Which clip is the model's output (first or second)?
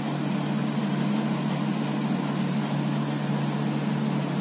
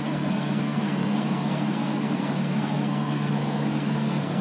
second